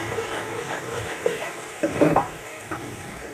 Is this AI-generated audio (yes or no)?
yes